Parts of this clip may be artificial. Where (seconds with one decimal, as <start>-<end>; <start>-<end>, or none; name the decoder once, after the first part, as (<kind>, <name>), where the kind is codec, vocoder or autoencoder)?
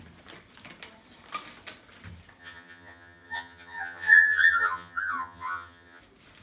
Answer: 2.4-6.0 (vocoder, HiFi-GAN)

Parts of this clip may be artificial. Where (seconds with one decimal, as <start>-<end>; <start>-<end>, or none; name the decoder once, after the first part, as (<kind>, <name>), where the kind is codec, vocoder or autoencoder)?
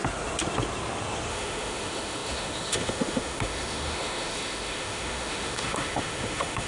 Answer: 1.3-6.7 (autoencoder, DAC-VAE)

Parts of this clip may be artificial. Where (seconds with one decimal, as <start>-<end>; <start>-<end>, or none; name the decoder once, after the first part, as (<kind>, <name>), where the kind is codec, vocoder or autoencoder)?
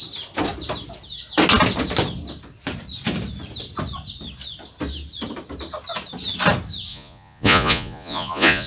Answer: 6.9-8.7 (vocoder, Vocos)